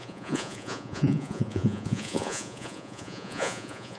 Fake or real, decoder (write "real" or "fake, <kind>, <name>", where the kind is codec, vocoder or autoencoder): fake, vocoder, Vocos